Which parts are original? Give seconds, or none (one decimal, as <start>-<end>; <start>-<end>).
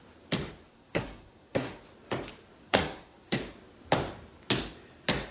0.0-0.7; 1.8-2.6; 3.4-5.3